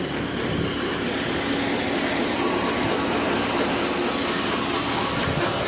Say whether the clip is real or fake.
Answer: real